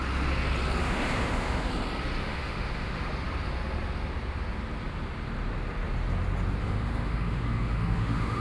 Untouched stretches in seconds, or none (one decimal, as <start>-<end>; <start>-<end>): 0.0-0.8; 1.7-2.2; 3.0-6.6